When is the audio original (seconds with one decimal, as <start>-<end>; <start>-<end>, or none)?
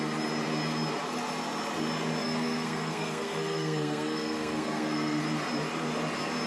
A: 0.0-2.2; 5.2-6.5